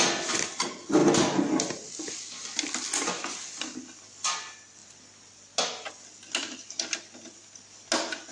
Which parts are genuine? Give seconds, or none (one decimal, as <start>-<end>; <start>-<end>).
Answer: 0.0-8.3